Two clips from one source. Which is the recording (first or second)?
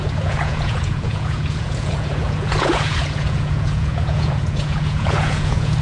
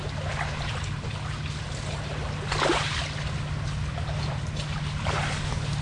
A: second